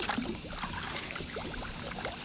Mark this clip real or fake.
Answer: real